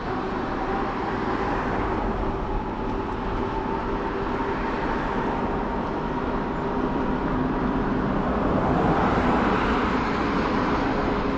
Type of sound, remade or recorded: recorded